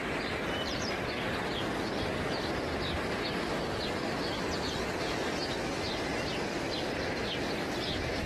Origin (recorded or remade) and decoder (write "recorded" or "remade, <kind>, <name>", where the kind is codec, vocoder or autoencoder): recorded